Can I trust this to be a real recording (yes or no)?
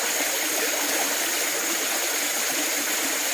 yes